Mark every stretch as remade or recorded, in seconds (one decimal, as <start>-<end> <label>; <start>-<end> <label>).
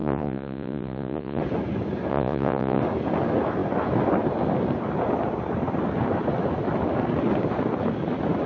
0.0-1.4 remade; 1.4-2.1 recorded; 2.1-2.8 remade; 2.8-8.5 recorded